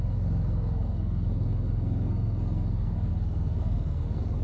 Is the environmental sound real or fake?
fake